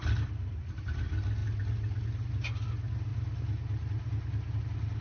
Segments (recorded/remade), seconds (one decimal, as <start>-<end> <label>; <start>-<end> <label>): 0.0-5.0 recorded